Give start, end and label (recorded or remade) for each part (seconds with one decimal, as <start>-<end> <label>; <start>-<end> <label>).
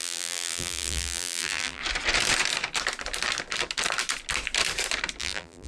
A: 0.0-1.8 remade; 1.8-5.2 recorded; 5.2-5.7 remade